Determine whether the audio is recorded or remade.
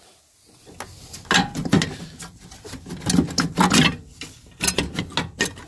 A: recorded